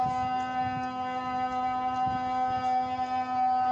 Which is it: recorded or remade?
recorded